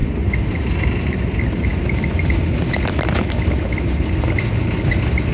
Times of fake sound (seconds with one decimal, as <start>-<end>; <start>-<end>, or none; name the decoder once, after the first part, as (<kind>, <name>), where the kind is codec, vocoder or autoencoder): none

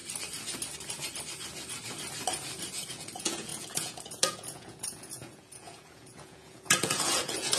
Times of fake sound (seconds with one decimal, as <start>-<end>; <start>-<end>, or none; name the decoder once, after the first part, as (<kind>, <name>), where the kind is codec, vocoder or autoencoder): 2.9-7.6 (vocoder, Vocos)

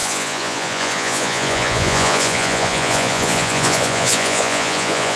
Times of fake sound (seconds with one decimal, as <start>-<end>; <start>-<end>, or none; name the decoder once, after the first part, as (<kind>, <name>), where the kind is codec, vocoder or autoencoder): 0.0-5.2 (vocoder, Vocos)

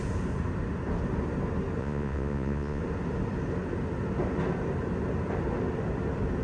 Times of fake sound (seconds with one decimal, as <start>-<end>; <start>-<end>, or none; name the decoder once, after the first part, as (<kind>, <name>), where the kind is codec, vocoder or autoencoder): 1.8-2.8 (vocoder, Vocos)

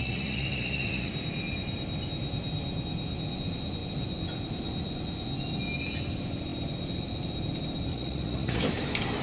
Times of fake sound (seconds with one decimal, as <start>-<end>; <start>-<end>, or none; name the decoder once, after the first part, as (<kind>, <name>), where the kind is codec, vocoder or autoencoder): 0.0-1.1 (vocoder, Vocos); 7.9-8.6

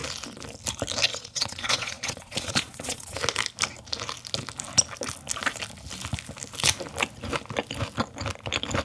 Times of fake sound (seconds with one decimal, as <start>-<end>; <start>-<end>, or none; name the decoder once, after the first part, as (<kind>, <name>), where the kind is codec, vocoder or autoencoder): 1.1-3.2 (vocoder, Vocos)

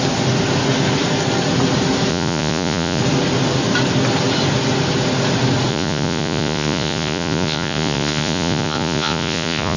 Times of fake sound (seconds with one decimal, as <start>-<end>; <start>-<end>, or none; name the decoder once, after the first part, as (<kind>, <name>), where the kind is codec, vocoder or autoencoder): 2.1-3.0 (vocoder, Vocos); 5.7-9.8